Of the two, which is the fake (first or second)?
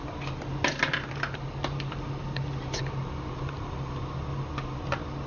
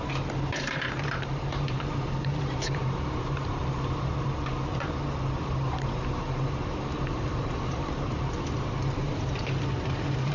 second